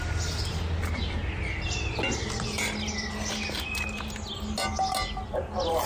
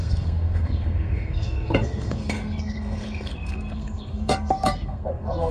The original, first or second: first